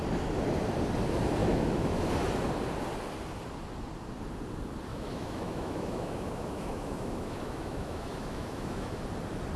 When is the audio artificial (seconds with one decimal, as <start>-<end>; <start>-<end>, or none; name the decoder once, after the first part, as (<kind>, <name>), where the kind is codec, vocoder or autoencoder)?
1.4-2.1 (autoencoder, DAC-VAE); 4.9-9.0